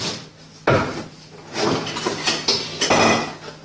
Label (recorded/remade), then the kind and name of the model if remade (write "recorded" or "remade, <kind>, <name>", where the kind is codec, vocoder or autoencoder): recorded